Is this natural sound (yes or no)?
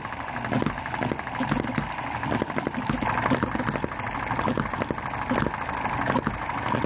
yes